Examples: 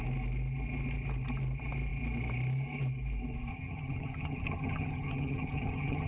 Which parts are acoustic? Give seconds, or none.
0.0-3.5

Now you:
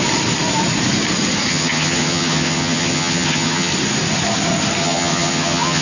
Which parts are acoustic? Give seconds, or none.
0.0-1.5; 3.7-4.8